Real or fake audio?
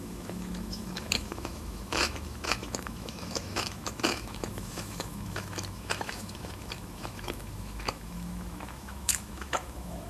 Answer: fake